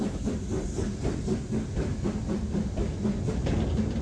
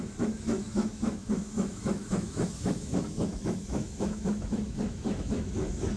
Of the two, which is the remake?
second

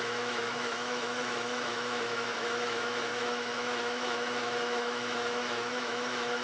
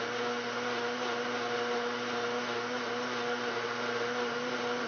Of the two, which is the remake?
first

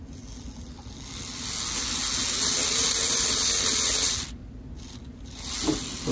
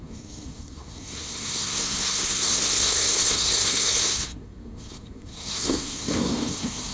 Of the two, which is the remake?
second